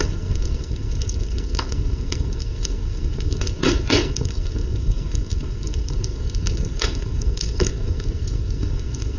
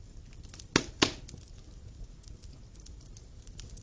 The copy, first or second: first